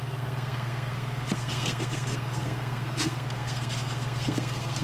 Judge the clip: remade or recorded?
remade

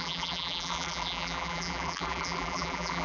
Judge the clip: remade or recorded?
remade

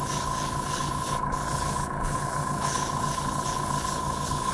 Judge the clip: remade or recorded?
remade